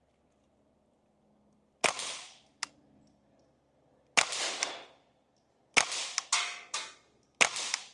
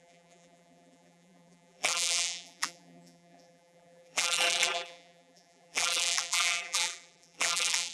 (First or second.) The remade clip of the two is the second